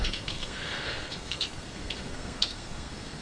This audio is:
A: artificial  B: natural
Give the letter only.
A